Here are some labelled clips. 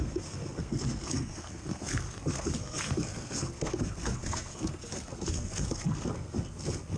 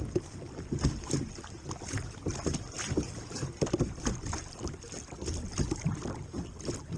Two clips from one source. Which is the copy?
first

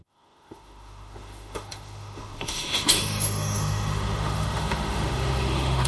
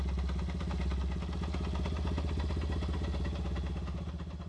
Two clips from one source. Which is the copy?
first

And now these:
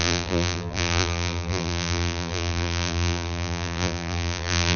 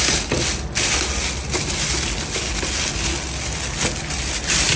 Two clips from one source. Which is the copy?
first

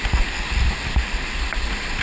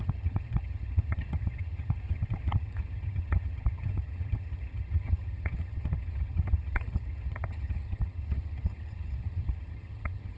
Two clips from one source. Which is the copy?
second